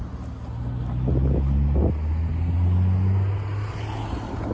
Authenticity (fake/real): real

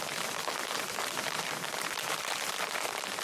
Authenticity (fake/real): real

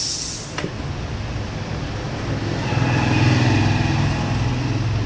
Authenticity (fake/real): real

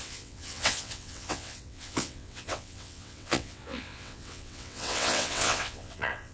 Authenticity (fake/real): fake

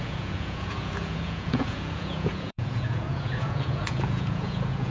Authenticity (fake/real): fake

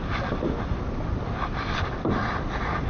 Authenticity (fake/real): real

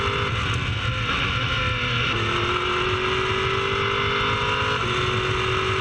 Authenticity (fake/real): real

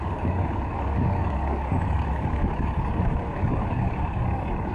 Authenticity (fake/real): fake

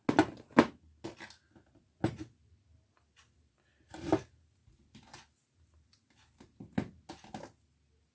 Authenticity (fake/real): real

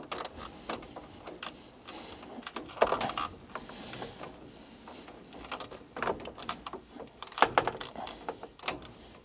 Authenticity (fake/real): real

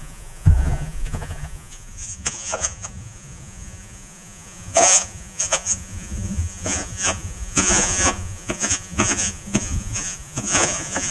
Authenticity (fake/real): fake